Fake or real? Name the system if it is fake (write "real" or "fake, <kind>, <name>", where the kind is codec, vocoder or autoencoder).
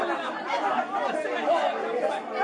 real